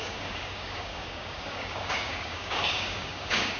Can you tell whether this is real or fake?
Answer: fake